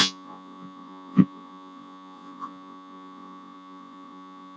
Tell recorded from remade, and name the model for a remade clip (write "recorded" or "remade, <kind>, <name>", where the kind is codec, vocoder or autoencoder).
remade, vocoder, Vocos